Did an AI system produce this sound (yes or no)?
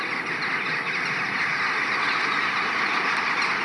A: no